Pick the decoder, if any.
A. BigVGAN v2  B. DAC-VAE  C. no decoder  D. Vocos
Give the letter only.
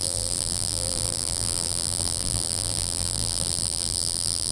A